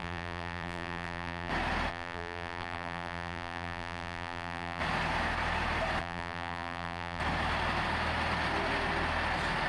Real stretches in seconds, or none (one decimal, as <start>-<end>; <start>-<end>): 1.5-1.9; 4.8-6.0; 7.2-9.7